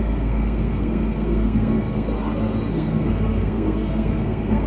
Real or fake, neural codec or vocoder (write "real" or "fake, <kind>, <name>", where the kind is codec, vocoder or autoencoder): fake, codec, SNAC